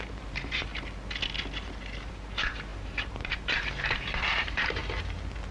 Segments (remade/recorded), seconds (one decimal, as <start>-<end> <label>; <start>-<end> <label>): 0.0-0.7 remade; 0.7-2.1 recorded; 2.1-4.8 remade; 4.8-5.5 recorded